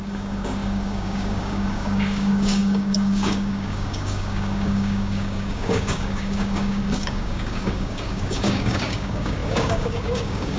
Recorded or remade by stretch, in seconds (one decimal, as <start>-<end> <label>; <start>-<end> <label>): 0.0-10.6 remade